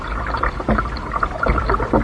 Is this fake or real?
real